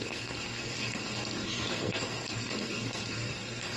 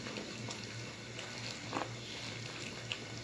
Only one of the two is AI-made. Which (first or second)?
first